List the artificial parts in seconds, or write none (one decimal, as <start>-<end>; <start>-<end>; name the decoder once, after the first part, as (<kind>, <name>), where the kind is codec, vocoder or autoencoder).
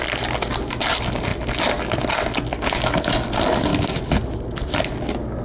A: none